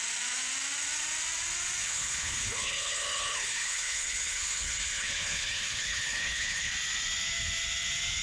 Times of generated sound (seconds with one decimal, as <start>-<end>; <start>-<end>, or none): 1.8-6.7